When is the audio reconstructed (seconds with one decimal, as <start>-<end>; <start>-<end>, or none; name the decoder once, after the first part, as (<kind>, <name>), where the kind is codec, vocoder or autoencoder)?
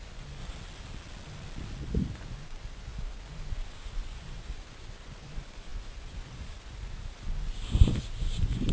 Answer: 0.0-0.4 (vocoder, Vocos); 1.8-8.7